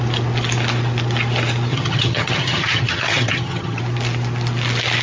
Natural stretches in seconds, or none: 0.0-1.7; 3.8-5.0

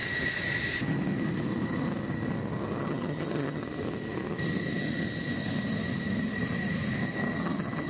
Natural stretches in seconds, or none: 0.0-2.8; 3.6-7.4

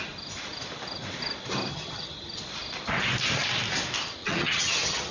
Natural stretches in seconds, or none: 0.0-1.7; 2.4-4.2